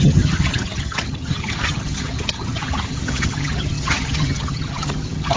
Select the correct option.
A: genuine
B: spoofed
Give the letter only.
B